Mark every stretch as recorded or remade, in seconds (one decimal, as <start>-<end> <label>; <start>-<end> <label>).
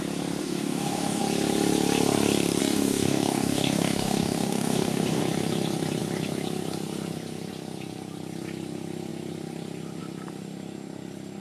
0.0-0.4 recorded; 0.4-1.2 remade; 1.2-2.6 recorded; 2.6-5.2 remade; 5.2-11.4 recorded